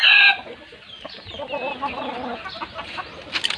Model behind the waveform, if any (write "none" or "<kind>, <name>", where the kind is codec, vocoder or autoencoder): none